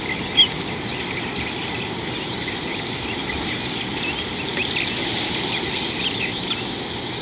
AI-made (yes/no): no